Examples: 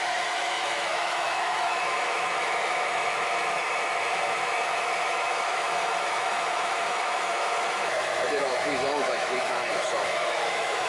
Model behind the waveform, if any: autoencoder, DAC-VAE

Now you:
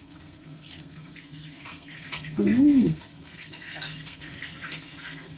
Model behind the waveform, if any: codec, SNAC